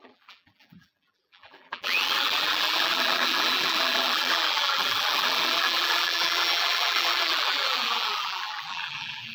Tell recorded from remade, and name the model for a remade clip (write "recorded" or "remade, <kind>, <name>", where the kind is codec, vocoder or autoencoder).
remade, vocoder, BigVGAN v2